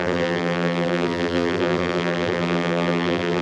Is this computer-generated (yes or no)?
yes